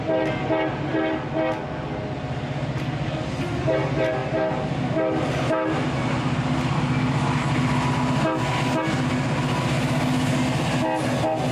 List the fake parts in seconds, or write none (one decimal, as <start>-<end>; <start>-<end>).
none